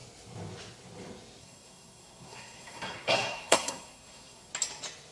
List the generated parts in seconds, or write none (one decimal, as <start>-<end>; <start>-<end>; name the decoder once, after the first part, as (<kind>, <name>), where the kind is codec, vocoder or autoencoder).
1.4-4.5 (codec, SNAC)